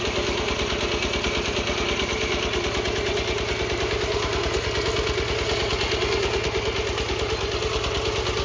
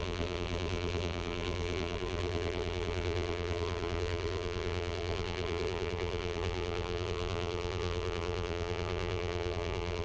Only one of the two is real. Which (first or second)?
first